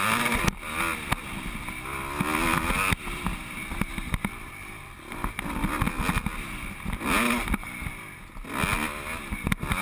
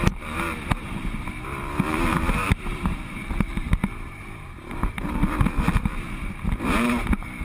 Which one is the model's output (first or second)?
second